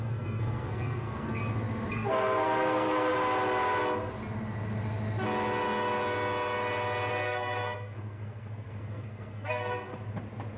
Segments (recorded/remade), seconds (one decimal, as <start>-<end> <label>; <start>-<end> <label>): 0.0-1.4 remade; 1.4-1.9 recorded; 1.9-3.1 remade; 3.1-7.1 recorded; 7.1-9.9 remade; 9.9-10.6 recorded